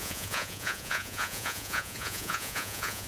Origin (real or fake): fake